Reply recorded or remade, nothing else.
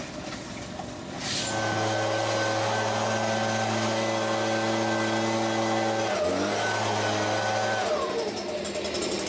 recorded